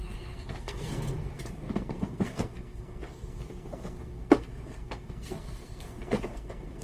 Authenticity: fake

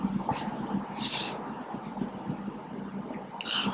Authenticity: real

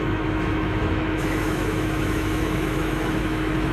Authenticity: fake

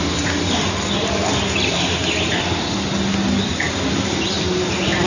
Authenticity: real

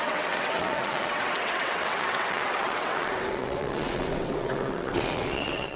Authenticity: fake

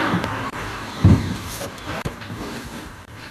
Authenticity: fake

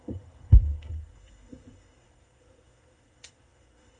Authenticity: fake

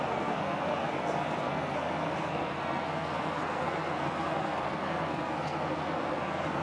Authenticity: fake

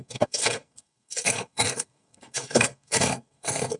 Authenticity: fake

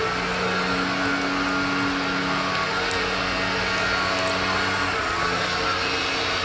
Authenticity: real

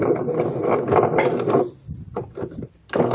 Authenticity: fake